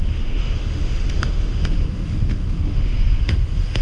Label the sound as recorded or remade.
remade